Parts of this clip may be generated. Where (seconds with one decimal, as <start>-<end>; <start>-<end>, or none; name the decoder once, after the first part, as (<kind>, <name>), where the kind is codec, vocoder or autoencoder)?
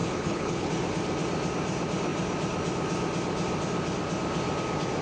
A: 0.0-0.7 (codec, HILCodec)